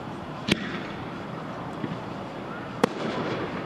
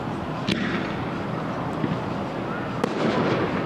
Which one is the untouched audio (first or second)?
second